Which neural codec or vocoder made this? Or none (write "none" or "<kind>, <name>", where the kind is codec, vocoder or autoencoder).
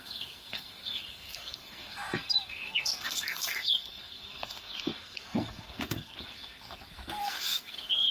codec, SNAC